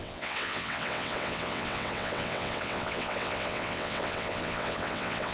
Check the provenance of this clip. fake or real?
fake